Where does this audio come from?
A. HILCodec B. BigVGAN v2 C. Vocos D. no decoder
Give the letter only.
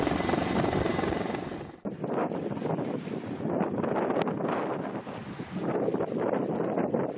D